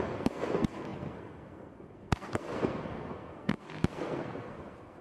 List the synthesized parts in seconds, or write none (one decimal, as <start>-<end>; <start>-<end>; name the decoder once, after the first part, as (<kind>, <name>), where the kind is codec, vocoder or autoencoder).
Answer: 0.0-5.0 (codec, SNAC)

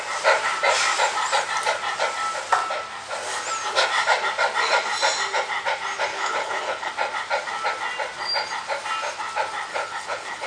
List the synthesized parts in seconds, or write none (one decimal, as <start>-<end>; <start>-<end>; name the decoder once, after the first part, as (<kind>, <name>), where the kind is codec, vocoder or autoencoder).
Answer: 6.1-6.9 (codec, HILCodec); 9.7-10.5